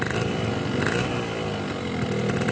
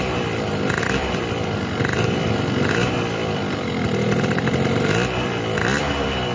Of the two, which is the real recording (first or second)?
first